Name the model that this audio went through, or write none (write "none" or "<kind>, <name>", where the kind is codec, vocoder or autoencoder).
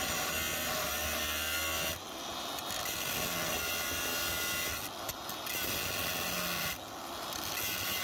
none